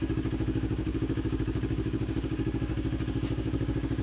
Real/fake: fake